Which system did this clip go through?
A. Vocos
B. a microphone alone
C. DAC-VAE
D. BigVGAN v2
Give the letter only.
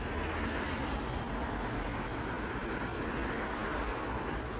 B